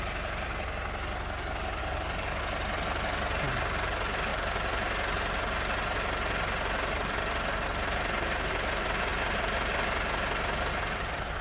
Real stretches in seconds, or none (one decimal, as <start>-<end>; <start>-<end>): 0.0-1.8; 2.4-11.4

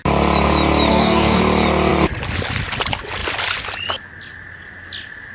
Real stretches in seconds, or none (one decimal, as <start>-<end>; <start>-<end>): 0.0-0.9; 1.4-5.3

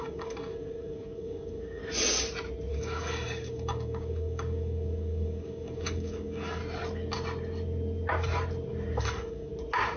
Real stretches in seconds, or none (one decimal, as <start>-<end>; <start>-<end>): 1.8-2.7; 6.6-9.0; 9.5-10.0